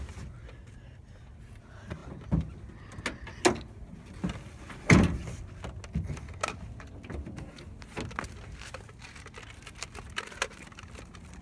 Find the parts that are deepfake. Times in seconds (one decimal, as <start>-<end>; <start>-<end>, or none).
none